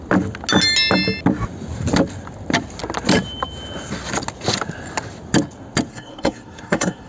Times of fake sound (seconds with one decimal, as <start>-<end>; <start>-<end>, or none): 5.9-7.1